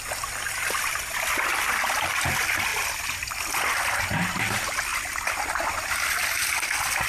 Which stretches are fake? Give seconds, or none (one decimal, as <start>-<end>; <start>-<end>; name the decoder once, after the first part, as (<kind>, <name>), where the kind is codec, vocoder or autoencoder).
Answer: none